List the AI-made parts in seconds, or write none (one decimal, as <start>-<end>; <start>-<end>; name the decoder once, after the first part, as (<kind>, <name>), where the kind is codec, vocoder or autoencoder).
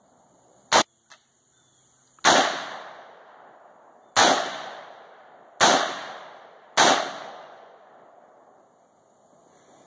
4.2-4.8 (vocoder, Vocos); 7.2-7.9